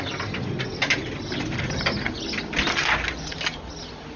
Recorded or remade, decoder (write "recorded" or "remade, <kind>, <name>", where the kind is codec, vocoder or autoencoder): recorded